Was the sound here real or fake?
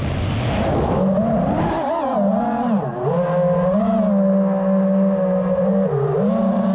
real